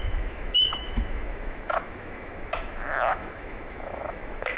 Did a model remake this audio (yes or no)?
yes